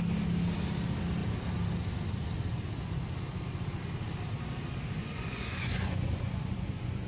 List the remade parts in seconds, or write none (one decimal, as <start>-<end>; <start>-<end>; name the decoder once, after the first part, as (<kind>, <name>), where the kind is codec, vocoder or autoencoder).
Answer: 5.0-7.1 (vocoder, Vocos)